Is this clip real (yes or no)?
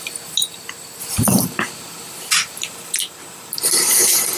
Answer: yes